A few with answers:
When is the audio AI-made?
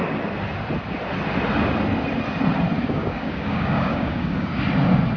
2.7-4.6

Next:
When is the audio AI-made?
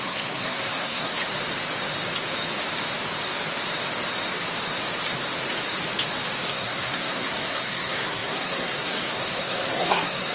0.0-1.2; 6.5-10.3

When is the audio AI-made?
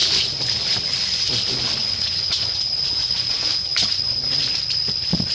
1.8-2.6; 3.0-4.3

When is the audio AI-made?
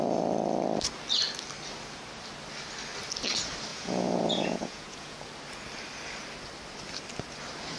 3.7-5.2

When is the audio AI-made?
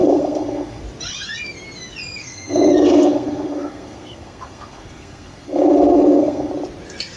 0.0-0.8; 2.2-6.5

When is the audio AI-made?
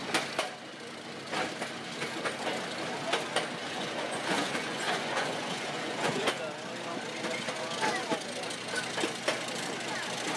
3.6-6.4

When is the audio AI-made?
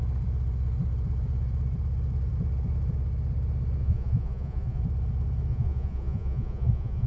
3.8-4.8; 5.5-7.1